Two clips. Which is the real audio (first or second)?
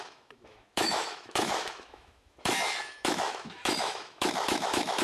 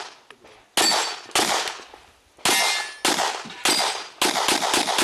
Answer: second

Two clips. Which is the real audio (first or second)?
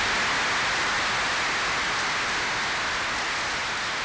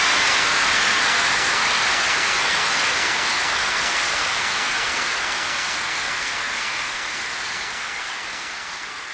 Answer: first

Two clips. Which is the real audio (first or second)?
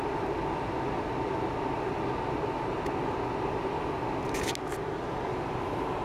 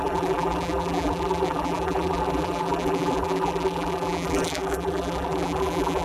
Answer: first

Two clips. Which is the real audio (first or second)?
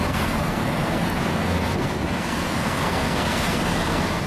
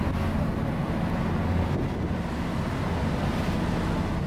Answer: second